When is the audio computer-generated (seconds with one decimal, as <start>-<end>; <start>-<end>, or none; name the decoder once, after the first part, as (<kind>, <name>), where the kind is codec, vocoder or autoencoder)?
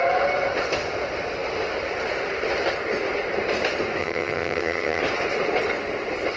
4.0-5.0 (vocoder, HiFi-GAN)